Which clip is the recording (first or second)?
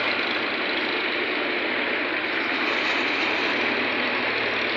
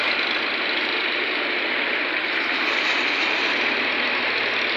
first